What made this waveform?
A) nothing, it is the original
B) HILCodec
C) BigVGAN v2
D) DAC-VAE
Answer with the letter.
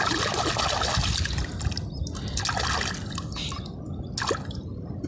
A